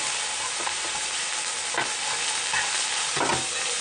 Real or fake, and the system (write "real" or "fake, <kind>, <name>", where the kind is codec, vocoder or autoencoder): real